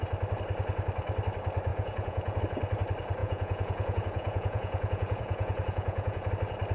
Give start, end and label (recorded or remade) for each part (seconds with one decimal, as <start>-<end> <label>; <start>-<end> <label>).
0.0-1.7 recorded; 1.7-2.4 remade; 2.4-3.2 recorded; 3.2-6.3 remade; 6.3-6.7 recorded